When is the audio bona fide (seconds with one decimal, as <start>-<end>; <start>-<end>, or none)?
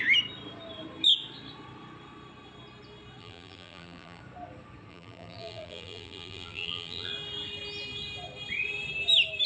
0.0-3.2; 4.2-4.9; 7.1-9.5